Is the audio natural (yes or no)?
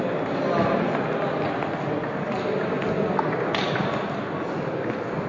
yes